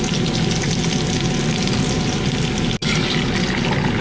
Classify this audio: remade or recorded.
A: recorded